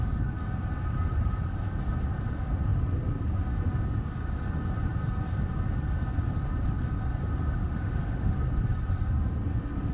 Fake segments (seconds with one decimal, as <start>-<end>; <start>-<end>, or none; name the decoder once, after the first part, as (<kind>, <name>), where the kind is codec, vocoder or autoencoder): 7.6-8.3 (autoencoder, DAC-VAE)